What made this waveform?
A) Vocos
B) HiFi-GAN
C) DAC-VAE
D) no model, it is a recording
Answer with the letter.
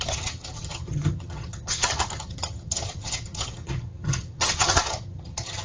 B